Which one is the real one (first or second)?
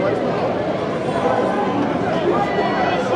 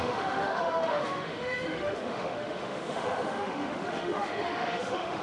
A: first